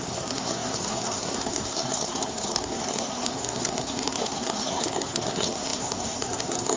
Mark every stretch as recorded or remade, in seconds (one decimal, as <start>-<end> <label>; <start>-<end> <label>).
0.0-6.8 remade